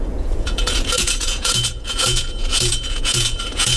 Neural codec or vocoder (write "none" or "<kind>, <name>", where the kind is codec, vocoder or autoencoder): vocoder, Vocos